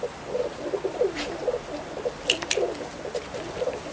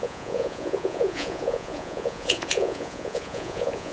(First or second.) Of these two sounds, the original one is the first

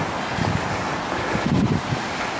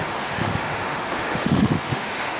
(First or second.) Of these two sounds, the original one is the first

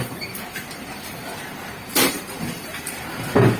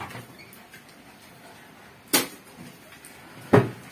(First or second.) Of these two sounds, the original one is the second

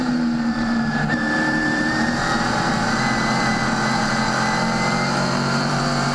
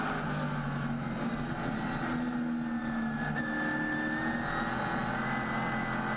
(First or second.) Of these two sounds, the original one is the second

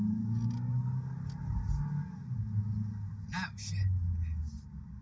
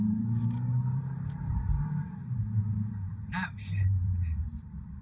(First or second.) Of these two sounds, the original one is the first